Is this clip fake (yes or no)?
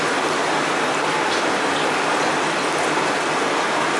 no